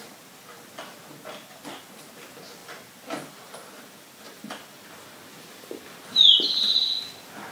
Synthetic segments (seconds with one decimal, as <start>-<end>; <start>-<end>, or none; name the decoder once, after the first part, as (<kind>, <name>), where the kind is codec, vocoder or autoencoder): none